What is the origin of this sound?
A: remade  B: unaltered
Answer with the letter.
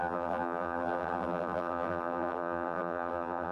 A